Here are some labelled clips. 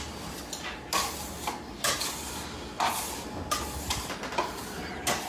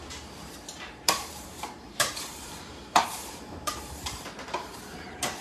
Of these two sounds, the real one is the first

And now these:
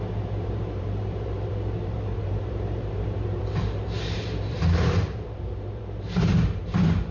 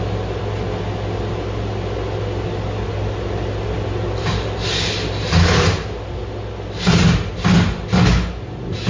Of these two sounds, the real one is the second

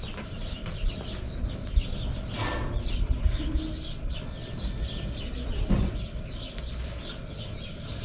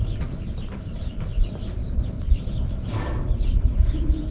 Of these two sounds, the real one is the first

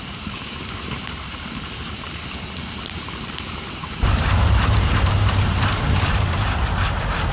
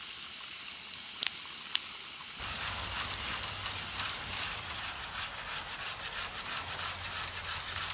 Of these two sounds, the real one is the second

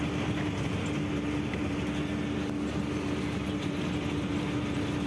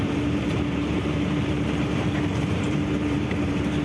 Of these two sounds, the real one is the first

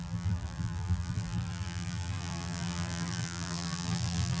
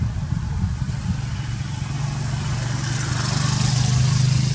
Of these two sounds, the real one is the second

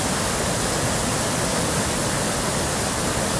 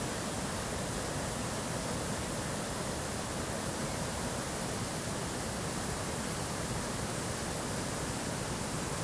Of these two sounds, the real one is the first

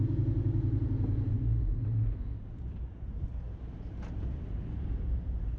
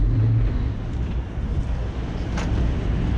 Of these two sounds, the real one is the second